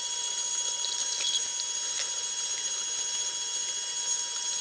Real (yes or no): yes